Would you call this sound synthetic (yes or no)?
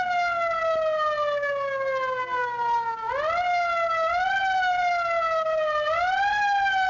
no